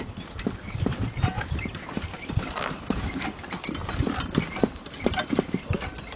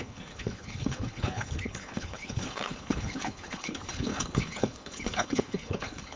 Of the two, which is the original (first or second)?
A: first